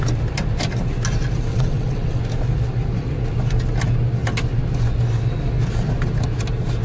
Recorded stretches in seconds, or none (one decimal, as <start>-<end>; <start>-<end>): 0.0-1.5; 2.2-6.8